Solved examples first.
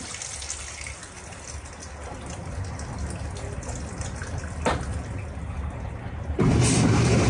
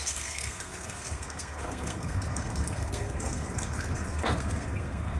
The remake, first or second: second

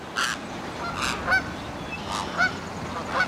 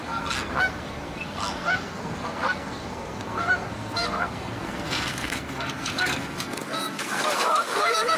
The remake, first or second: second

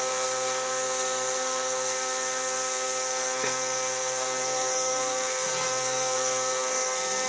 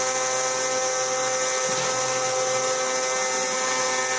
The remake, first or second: first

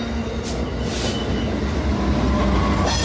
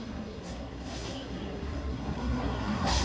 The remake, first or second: second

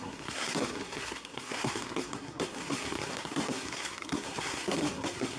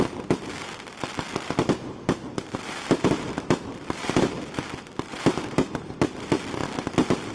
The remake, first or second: first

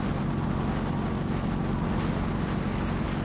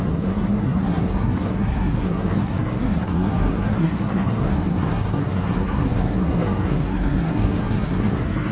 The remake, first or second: second